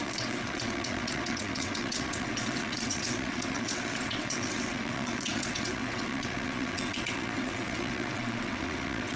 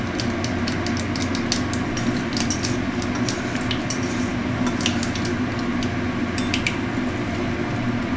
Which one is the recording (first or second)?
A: second